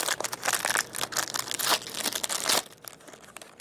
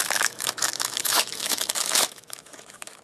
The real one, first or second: first